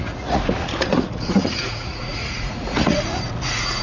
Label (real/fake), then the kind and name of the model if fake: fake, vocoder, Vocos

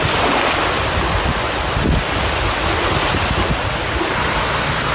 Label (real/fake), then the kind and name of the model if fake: real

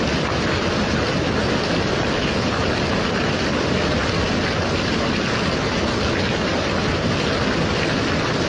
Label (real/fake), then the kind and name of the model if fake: real